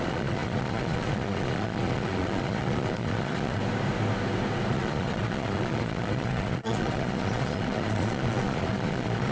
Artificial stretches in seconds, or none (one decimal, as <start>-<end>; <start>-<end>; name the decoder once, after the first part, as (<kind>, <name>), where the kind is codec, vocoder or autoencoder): 0.0-3.6 (vocoder, Vocos); 4.7-9.3